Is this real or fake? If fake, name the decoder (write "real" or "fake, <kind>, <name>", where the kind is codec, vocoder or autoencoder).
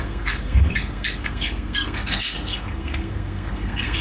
fake, codec, SNAC